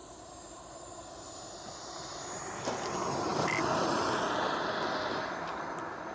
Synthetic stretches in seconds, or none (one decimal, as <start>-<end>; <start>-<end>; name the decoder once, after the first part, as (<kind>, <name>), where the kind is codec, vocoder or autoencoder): none